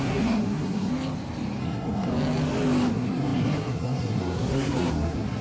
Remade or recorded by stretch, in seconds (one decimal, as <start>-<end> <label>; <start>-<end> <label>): 0.0-0.9 remade; 0.9-1.6 recorded; 1.6-2.1 remade; 2.1-2.9 recorded; 2.9-5.4 remade